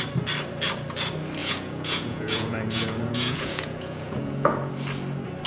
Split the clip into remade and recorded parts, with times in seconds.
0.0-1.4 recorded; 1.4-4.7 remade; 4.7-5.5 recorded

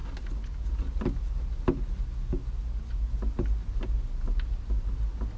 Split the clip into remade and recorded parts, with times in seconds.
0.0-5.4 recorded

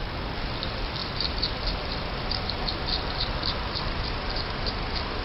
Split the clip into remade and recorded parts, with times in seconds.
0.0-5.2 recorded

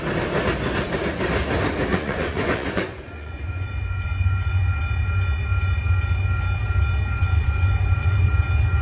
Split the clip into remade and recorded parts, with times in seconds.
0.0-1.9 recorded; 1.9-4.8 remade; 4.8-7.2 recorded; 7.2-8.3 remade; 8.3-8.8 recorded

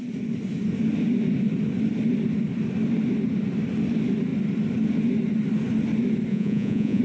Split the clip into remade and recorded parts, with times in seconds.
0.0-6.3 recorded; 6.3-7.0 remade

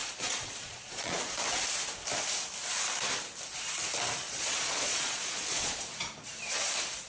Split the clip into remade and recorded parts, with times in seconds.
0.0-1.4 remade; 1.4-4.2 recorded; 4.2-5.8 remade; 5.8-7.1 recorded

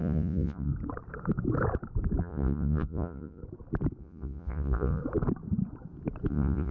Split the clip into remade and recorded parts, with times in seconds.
0.0-0.7 remade; 0.7-2.2 recorded; 2.2-3.4 remade; 3.4-4.0 recorded; 4.0-5.0 remade; 5.0-6.3 recorded; 6.3-6.7 remade

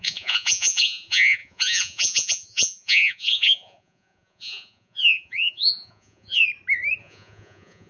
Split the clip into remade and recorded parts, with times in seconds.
0.0-6.4 remade; 6.4-7.0 recorded; 7.0-7.9 remade